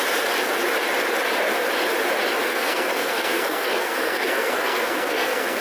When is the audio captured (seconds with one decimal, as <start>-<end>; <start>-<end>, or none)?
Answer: 0.0-2.4